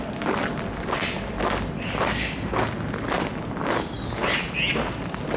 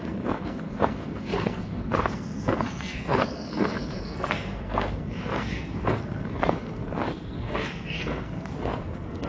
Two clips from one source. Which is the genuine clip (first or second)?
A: first